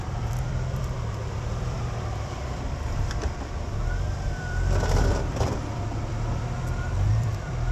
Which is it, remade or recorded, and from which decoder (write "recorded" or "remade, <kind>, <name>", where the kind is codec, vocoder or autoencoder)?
remade, vocoder, BigVGAN v2